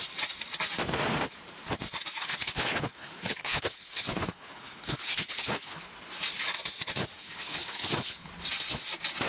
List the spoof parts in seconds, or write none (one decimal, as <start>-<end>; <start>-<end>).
2.2-5.9; 7.2-8.3